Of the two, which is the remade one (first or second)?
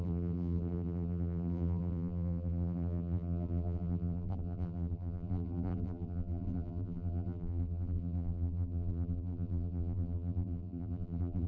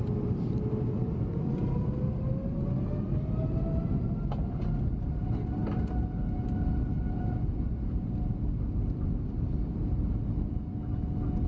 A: first